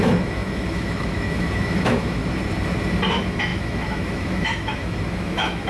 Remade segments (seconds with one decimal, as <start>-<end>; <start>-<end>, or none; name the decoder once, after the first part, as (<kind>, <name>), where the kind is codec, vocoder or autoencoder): 0.0-2.2 (autoencoder, DAC-VAE); 3.1-5.7